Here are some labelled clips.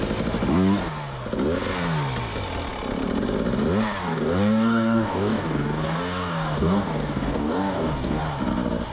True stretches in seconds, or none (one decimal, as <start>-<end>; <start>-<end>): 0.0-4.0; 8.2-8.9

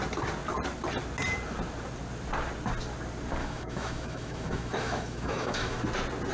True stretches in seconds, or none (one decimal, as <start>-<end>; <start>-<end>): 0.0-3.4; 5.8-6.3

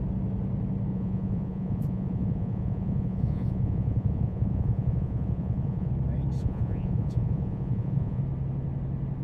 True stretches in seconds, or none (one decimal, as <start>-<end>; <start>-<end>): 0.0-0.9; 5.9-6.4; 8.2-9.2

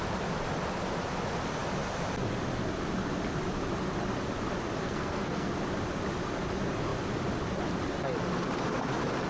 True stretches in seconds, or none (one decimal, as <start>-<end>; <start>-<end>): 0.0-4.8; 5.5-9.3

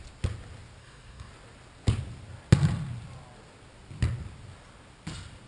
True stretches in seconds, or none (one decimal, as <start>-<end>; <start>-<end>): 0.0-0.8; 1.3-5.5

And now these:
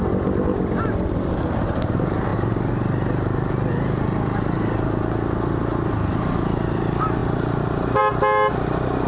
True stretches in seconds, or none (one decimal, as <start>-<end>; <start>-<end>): 0.0-9.1